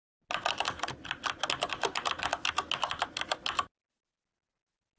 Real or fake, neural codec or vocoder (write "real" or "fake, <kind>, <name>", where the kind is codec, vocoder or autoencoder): real